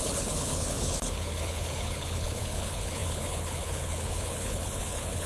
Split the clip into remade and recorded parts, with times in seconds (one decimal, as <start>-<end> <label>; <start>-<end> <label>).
0.0-5.3 remade